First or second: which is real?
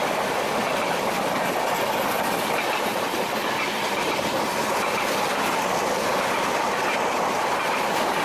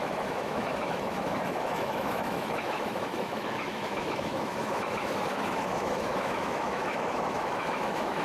first